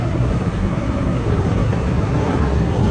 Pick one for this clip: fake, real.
fake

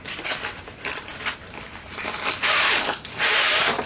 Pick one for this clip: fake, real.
real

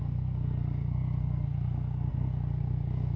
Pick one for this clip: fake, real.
fake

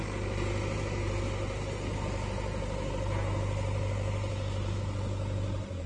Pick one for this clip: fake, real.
real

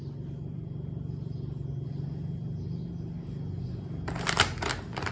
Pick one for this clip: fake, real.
real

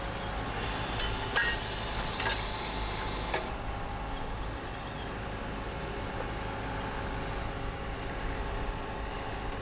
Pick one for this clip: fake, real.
real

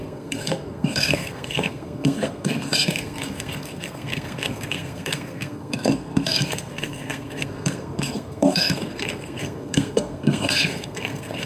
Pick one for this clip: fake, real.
fake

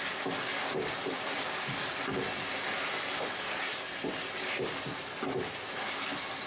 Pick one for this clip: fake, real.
real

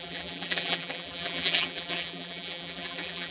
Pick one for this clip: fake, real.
fake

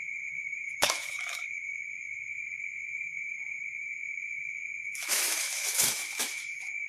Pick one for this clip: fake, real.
fake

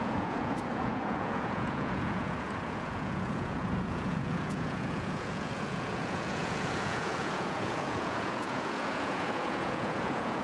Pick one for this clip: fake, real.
fake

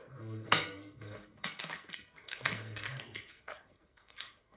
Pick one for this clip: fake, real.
fake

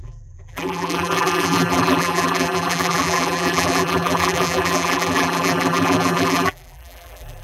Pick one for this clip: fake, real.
fake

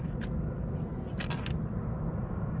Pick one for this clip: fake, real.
real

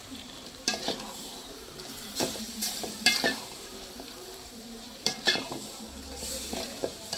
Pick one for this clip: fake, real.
fake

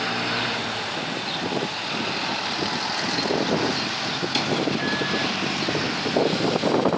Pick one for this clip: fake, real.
real